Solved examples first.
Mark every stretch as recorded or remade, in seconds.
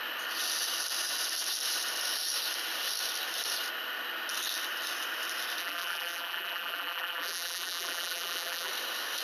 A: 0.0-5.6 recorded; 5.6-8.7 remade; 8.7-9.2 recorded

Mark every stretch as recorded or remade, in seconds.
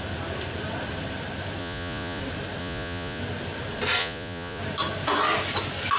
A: 0.0-1.6 recorded; 1.6-2.2 remade; 2.2-2.6 recorded; 2.6-3.2 remade; 3.2-4.0 recorded; 4.0-4.6 remade; 4.6-6.0 recorded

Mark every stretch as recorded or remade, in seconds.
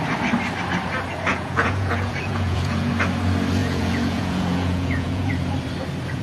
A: 0.0-1.3 recorded; 1.3-2.9 remade; 2.9-3.6 recorded; 3.6-5.3 remade; 5.3-6.2 recorded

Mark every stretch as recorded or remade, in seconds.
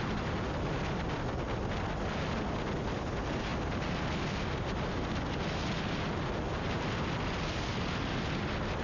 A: 0.0-8.8 recorded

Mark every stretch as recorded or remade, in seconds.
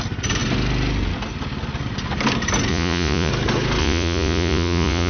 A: 0.0-2.7 recorded; 2.7-3.3 remade; 3.3-3.8 recorded; 3.8-5.1 remade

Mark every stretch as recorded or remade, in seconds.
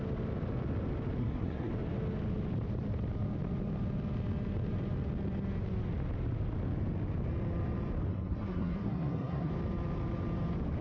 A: 0.0-1.2 recorded; 1.2-1.7 remade; 1.7-8.1 recorded; 8.1-9.5 remade; 9.5-10.8 recorded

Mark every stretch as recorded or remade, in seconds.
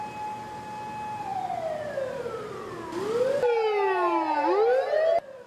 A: 0.0-5.5 recorded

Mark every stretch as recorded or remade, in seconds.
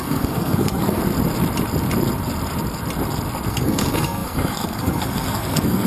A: 0.0-1.0 remade; 1.0-3.5 recorded; 3.5-5.9 remade